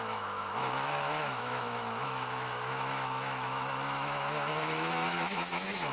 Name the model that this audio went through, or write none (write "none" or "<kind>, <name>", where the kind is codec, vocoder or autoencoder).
autoencoder, DAC-VAE